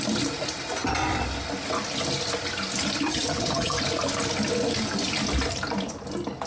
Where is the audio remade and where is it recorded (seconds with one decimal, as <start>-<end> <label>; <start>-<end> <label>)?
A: 0.0-3.1 recorded; 3.1-3.8 remade; 3.8-6.5 recorded